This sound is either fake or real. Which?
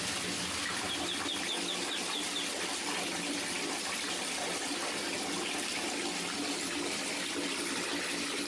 real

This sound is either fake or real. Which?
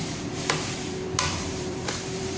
fake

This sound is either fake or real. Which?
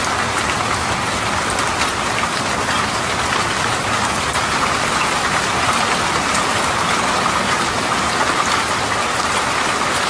fake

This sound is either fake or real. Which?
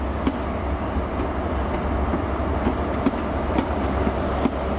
real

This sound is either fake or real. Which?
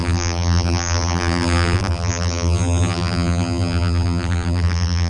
fake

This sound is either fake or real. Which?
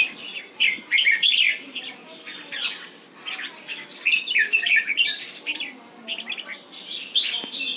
fake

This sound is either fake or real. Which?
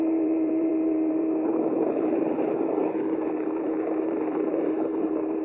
fake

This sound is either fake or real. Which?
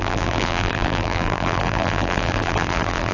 fake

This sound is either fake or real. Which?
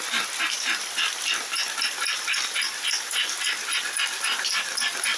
real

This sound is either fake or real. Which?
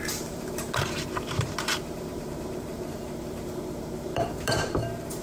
fake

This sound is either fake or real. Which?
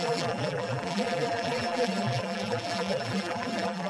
fake